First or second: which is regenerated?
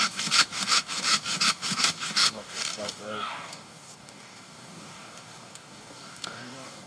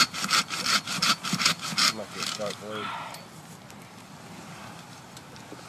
first